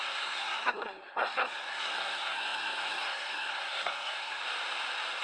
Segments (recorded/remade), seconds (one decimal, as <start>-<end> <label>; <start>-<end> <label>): 0.0-4.4 remade; 4.4-5.2 recorded